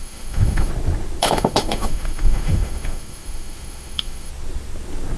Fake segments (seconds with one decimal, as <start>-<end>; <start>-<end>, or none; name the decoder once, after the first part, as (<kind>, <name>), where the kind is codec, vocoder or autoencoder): 0.0-0.7 (autoencoder, DAC-VAE); 1.2-4.3